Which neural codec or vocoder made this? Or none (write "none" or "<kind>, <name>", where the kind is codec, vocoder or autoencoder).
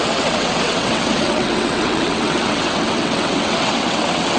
vocoder, WaveNeXt